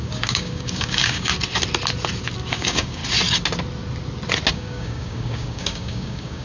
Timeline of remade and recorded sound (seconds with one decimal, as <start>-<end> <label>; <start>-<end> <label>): 0.0-1.3 remade; 1.3-2.5 recorded; 2.5-3.0 remade; 3.0-4.5 recorded; 4.5-6.4 remade